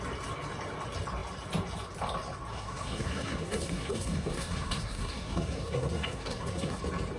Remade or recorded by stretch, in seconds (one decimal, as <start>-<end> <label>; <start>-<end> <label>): 0.0-2.5 recorded; 2.5-6.8 remade; 6.8-7.2 recorded